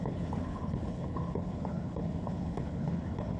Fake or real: fake